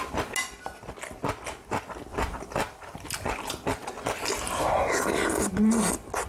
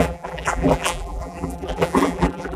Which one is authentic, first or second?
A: first